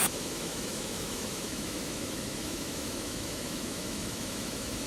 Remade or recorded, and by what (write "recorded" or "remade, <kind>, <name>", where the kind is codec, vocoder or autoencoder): remade, autoencoder, DAC-VAE